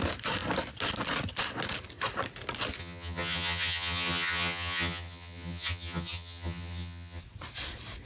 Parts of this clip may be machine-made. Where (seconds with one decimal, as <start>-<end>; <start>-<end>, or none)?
2.8-7.2